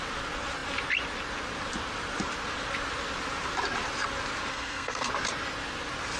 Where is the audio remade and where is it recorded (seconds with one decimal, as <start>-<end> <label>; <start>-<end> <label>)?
0.0-4.5 recorded; 4.5-5.1 remade; 5.1-6.2 recorded